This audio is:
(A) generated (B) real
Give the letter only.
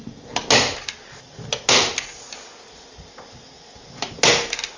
B